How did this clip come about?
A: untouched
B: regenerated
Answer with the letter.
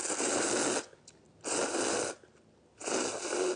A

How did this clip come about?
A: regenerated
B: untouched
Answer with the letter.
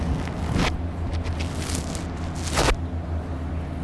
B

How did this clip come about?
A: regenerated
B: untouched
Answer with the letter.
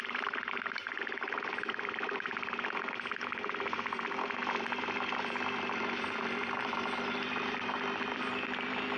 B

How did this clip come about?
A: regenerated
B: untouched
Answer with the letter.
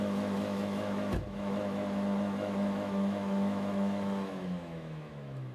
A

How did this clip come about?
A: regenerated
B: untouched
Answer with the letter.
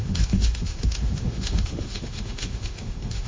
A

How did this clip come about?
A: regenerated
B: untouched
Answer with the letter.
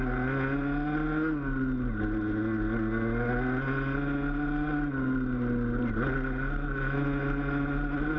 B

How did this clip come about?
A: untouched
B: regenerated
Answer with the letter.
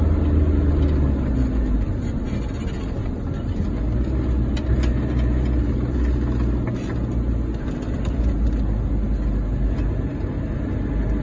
A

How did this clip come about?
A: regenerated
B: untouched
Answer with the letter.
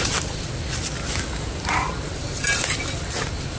B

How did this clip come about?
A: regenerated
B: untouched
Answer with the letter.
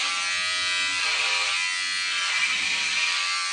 B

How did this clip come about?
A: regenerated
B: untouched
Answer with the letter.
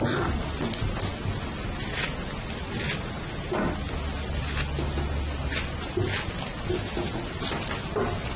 B